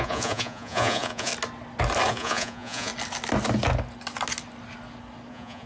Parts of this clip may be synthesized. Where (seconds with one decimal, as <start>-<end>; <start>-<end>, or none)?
0.0-1.3; 2.1-2.9; 5.3-5.7